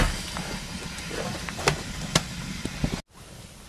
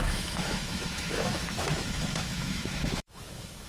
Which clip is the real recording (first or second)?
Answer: first